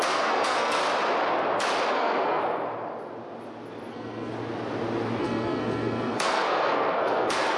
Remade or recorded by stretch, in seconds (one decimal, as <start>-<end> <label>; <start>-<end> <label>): 0.0-0.8 remade; 0.8-1.9 recorded; 1.9-2.4 remade; 2.4-3.9 recorded; 3.9-4.3 remade; 4.3-5.2 recorded; 5.2-7.6 remade